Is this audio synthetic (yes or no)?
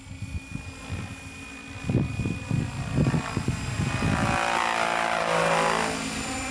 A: no